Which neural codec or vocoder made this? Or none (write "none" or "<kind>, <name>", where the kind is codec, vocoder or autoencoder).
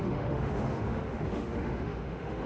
autoencoder, DAC-VAE